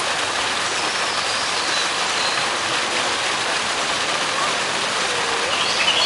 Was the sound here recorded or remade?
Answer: recorded